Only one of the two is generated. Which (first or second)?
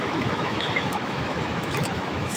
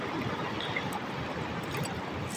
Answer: first